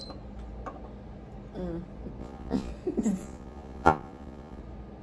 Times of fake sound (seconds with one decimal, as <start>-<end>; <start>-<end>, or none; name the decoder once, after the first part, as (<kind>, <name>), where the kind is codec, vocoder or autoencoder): 2.2-2.7 (vocoder, Vocos); 3.2-4.6